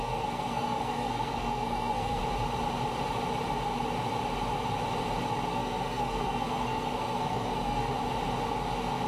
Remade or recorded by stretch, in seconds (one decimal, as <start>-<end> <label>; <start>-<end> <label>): 0.0-2.2 remade; 2.2-5.5 recorded; 5.5-7.9 remade; 7.9-9.1 recorded

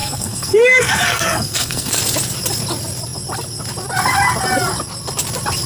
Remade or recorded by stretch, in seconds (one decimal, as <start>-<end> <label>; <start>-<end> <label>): 0.0-2.0 remade; 2.0-5.7 recorded

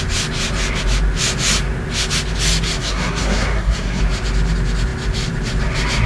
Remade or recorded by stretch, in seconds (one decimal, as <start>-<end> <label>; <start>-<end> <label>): 0.0-2.8 recorded; 2.8-4.0 remade; 4.0-6.1 recorded

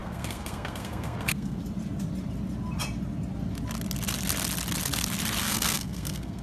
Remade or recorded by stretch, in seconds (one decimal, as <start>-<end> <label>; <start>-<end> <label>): 0.0-1.6 remade; 1.6-5.4 recorded; 5.4-6.4 remade

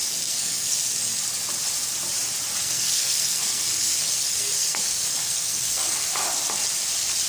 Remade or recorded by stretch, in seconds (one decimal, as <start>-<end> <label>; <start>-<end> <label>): 0.0-1.2 remade; 1.2-2.6 recorded; 2.6-6.1 remade; 6.1-7.3 recorded

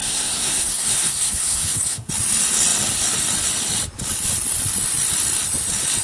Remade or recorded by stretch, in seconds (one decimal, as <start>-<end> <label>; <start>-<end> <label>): 0.0-2.1 remade; 2.1-6.0 recorded

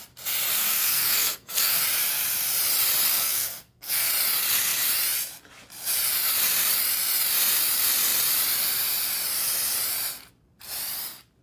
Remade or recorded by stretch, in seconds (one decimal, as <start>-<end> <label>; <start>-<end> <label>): 0.0-0.5 recorded; 0.5-1.8 remade; 1.8-3.1 recorded; 3.1-4.1 remade; 4.1-11.4 recorded

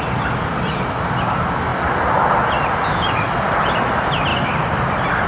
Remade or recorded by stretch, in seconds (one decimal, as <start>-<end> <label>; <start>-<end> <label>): 0.0-5.3 recorded